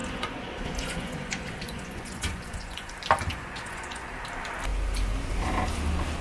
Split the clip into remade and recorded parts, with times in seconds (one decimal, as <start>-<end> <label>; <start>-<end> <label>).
0.0-2.9 remade; 2.9-3.3 recorded; 3.3-4.1 remade; 4.1-6.2 recorded